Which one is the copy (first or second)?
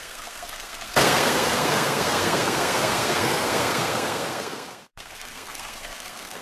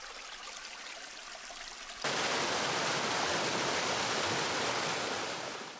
first